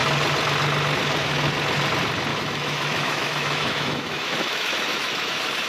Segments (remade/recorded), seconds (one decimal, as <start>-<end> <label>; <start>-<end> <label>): 0.0-2.3 recorded; 2.3-5.7 remade